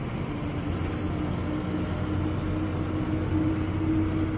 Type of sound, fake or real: real